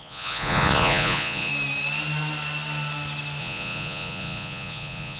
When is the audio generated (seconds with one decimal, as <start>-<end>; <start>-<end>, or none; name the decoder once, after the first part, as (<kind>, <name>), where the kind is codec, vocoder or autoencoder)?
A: 0.0-1.5 (vocoder, Vocos); 3.4-5.2